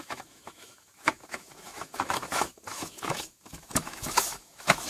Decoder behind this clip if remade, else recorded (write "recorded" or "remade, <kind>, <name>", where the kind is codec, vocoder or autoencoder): remade, autoencoder, DAC-VAE